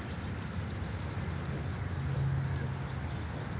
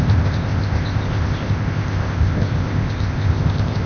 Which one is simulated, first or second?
second